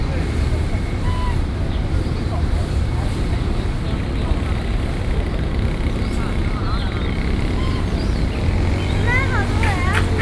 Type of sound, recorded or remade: recorded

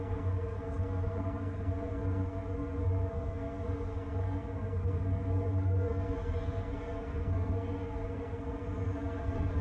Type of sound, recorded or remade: remade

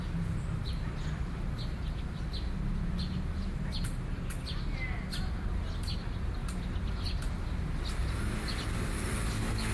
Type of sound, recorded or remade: recorded